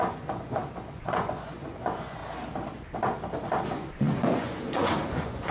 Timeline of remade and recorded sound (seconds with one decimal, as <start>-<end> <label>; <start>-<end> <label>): 0.0-2.2 remade; 2.2-3.6 recorded; 3.6-5.5 remade